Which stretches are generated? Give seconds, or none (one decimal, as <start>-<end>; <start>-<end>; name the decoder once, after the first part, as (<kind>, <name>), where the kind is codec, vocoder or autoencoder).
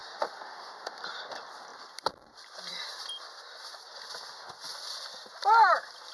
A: 0.0-1.0 (vocoder, BigVGAN v2); 1.7-2.7